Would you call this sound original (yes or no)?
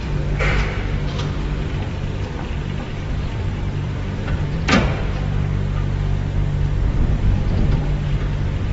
no